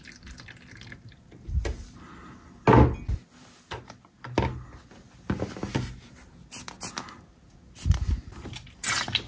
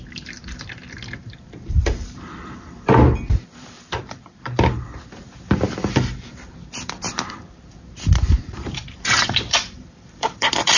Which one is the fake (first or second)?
second